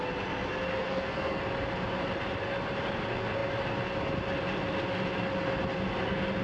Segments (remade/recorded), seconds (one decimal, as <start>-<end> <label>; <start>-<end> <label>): 0.0-0.8 recorded; 0.8-1.4 remade; 1.4-6.4 recorded